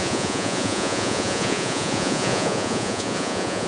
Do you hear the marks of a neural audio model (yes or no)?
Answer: yes